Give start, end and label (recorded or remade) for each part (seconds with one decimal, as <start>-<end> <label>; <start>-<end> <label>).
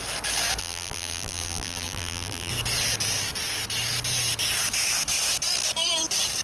0.0-0.6 recorded; 0.6-2.5 remade; 2.5-6.4 recorded